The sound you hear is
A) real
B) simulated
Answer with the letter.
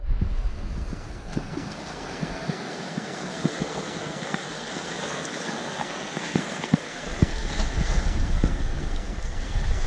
B